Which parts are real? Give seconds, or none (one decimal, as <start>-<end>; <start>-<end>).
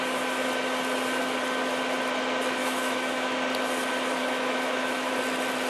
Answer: 0.0-2.6; 3.4-4.2; 5.1-5.7